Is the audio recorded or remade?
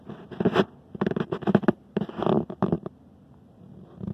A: recorded